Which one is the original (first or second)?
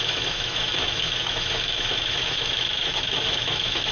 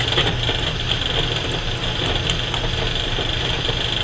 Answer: second